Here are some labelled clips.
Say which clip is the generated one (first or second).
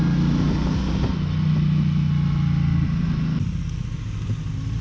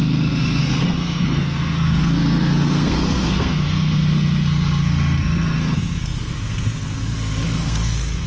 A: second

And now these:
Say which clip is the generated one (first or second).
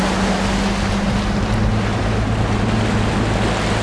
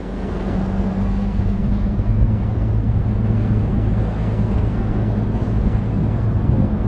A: second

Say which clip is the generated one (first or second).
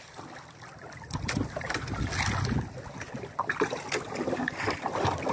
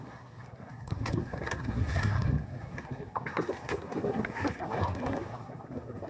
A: second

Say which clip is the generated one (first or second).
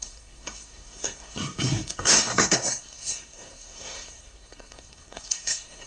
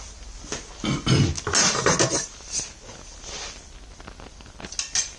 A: first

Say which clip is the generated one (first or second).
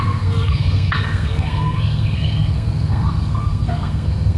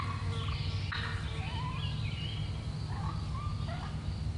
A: first